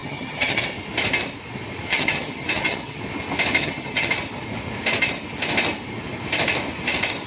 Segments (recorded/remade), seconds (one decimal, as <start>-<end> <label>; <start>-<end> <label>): 0.0-0.6 remade; 0.6-1.9 recorded; 1.9-3.0 remade; 3.0-3.6 recorded; 3.6-4.1 remade; 4.1-7.3 recorded